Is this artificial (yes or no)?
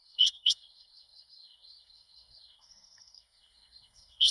yes